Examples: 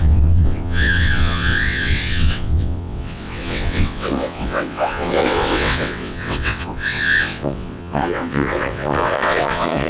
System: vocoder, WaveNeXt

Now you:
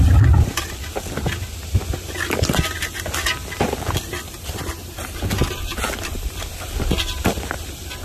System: vocoder, BigVGAN v2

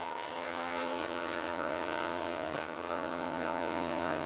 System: vocoder, HiFi-GAN